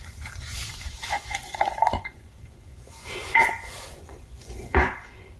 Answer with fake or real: fake